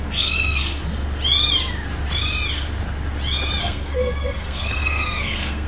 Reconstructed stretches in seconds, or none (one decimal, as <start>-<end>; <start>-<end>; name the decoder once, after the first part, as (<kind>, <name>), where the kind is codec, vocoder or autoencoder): 0.0-0.8 (codec, SNAC); 3.6-5.7